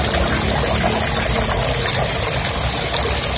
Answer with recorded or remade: recorded